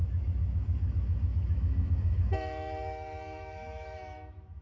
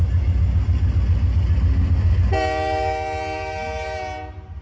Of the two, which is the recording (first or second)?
second